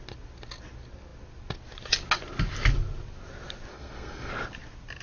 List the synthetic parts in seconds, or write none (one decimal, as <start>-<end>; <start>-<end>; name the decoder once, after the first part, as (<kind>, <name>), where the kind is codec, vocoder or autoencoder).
3.7-4.3 (codec, SNAC)